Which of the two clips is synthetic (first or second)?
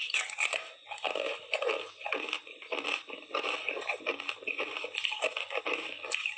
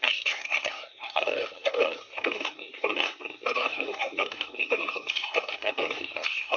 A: second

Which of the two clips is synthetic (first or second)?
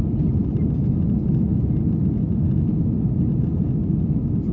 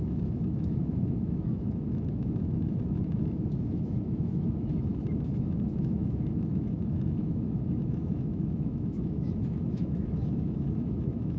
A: second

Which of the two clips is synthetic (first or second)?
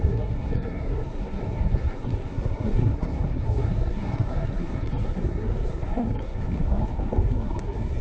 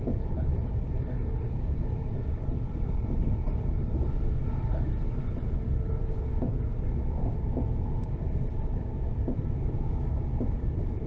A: first